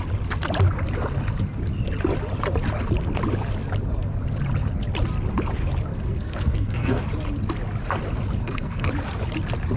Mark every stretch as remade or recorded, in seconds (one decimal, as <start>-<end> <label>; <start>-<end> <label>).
0.0-5.9 recorded; 5.9-7.0 remade; 7.0-8.4 recorded; 8.4-8.9 remade; 8.9-9.8 recorded